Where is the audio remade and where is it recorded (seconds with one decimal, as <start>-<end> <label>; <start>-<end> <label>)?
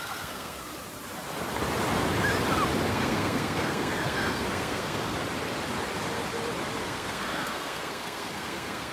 0.0-0.7 remade; 0.7-2.9 recorded; 2.9-5.1 remade; 5.1-6.8 recorded; 6.8-8.9 remade